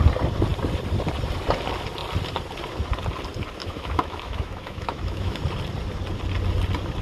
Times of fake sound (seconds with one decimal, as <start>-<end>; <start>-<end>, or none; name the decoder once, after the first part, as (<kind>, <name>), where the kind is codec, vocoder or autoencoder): 3.6-5.4 (autoencoder, DAC-VAE)